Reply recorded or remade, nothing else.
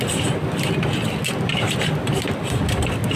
recorded